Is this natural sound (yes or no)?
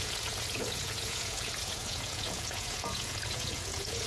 no